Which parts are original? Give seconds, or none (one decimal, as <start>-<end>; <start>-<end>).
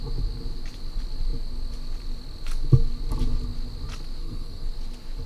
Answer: 0.0-4.2; 4.7-5.3